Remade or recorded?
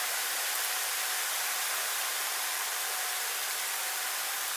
remade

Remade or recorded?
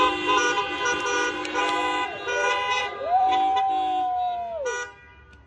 recorded